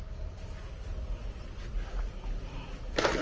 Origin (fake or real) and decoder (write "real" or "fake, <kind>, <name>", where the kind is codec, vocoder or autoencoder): real